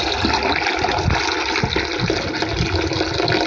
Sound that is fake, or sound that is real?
real